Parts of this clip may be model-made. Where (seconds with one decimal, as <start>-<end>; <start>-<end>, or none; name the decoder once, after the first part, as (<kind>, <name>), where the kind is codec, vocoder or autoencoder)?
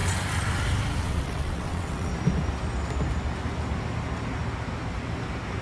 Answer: 1.0-2.1 (vocoder, WaveNeXt)